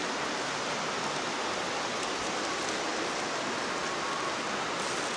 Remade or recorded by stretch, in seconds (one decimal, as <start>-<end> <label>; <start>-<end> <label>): 0.0-5.2 recorded